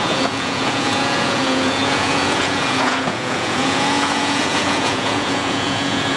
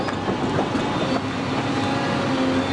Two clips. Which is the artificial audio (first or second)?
first